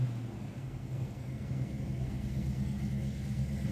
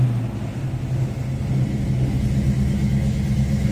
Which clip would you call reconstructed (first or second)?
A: first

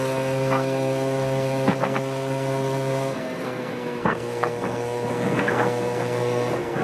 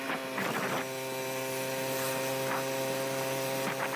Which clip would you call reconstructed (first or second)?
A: first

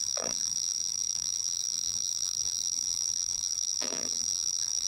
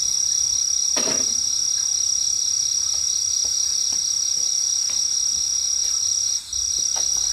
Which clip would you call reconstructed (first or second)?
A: first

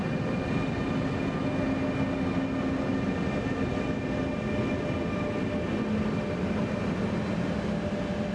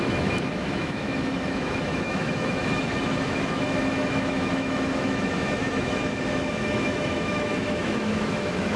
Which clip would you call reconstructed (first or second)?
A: second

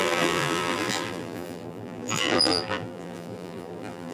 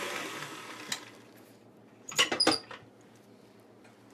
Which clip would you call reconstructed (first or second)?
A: first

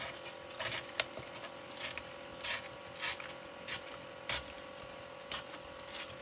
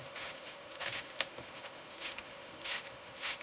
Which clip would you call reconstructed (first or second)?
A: second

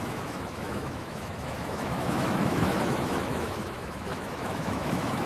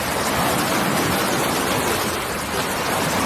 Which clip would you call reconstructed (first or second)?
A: first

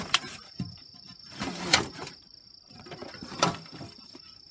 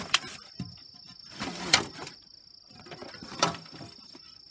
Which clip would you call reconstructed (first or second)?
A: first